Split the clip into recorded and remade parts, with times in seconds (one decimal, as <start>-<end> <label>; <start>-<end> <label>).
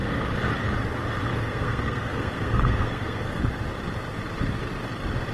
0.0-1.3 recorded; 1.3-3.4 remade; 3.4-5.3 recorded